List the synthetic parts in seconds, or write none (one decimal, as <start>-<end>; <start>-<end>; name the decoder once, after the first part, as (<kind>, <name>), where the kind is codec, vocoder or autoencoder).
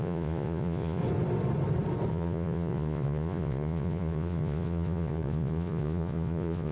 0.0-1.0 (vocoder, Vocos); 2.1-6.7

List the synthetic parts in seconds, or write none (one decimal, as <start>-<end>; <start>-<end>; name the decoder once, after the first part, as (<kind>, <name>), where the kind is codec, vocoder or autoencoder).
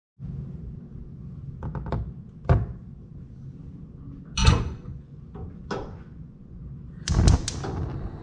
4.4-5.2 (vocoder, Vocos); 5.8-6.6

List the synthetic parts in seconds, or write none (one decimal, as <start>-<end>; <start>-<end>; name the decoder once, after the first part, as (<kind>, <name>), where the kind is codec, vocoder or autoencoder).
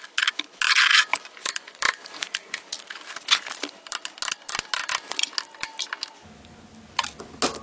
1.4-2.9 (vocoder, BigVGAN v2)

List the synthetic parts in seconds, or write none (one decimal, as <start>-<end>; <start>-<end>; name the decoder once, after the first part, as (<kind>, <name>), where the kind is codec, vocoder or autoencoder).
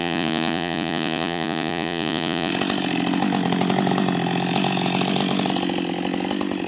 0.0-2.5 (vocoder, Vocos)